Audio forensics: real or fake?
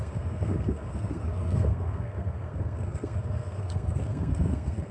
fake